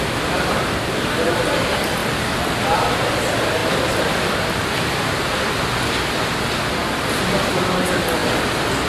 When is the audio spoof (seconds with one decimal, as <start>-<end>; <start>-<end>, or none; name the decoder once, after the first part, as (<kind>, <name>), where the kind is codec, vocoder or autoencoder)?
2.0-2.5 (vocoder, BigVGAN v2)